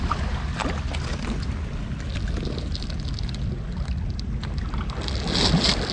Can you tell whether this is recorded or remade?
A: recorded